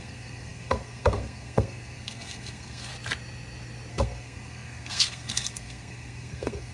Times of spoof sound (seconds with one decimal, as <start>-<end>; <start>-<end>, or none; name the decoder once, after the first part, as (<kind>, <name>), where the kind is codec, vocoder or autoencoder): 0.0-2.9 (codec, SNAC); 3.9-6.7